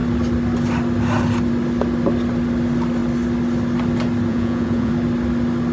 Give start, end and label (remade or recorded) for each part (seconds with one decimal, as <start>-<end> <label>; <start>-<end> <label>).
0.0-4.3 recorded; 4.3-4.9 remade; 4.9-5.7 recorded